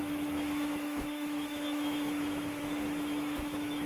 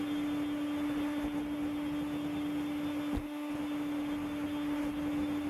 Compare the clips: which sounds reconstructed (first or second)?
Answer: first